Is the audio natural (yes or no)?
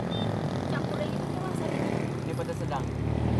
yes